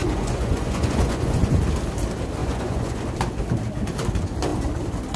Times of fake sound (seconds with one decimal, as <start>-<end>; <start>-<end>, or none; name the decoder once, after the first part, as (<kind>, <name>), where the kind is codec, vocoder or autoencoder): 0.0-1.5 (vocoder, Vocos); 2.4-3.0